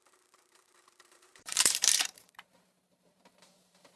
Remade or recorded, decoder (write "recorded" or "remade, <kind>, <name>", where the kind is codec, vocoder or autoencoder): remade, vocoder, BigVGAN v2